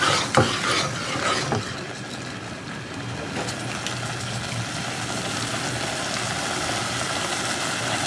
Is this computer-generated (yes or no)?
no